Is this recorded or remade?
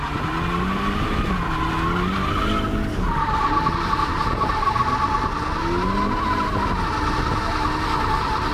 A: recorded